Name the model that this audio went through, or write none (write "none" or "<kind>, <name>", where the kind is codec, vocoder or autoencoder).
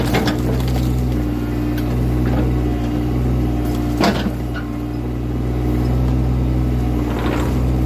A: none